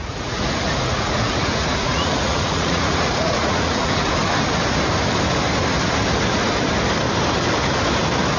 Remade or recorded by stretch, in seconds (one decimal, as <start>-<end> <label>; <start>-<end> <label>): 0.0-4.1 remade; 4.1-8.4 recorded